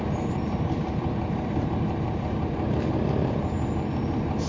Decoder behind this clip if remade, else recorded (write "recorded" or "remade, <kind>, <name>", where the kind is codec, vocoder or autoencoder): remade, vocoder, BigVGAN v2